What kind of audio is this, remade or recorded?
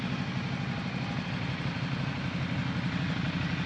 recorded